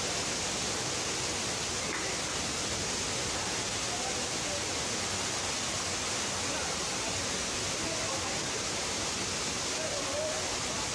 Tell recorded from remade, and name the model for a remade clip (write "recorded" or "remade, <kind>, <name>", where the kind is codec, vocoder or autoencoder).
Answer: recorded